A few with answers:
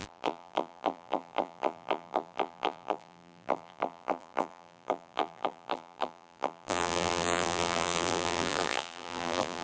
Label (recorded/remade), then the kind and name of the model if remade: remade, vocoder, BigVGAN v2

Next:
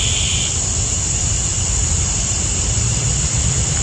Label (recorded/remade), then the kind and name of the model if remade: remade, vocoder, BigVGAN v2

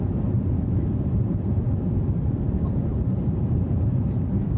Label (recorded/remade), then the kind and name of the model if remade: remade, vocoder, BigVGAN v2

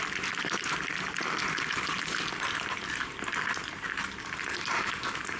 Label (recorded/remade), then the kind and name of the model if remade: recorded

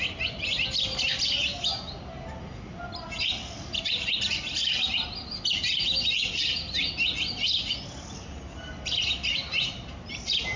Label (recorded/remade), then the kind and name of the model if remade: recorded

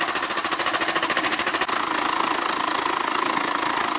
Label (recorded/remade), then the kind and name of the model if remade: recorded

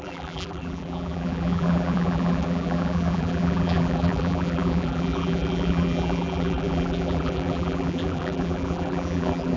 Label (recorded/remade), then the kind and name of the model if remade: remade, vocoder, BigVGAN v2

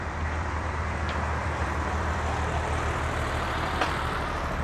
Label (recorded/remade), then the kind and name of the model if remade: remade, vocoder, BigVGAN v2